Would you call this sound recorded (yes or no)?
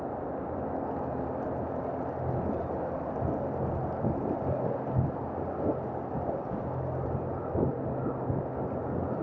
yes